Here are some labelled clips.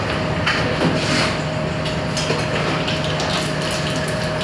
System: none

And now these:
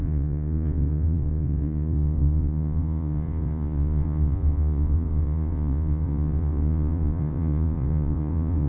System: vocoder, Vocos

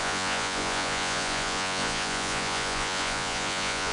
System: vocoder, Vocos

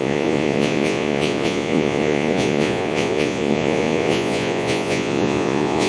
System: vocoder, Vocos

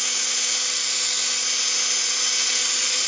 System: none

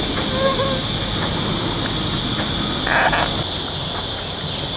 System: none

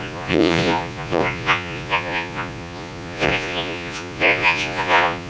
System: vocoder, Vocos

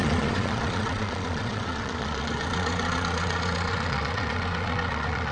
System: vocoder, Vocos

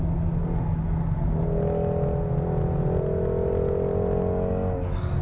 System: none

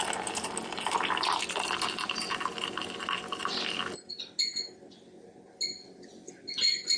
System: none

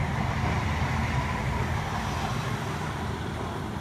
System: none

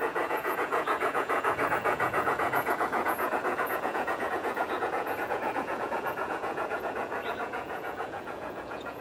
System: vocoder, Vocos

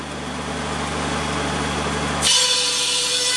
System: none